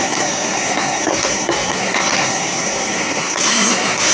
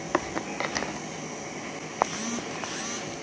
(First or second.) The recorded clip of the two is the second